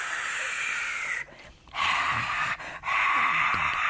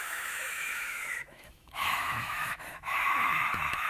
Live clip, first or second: first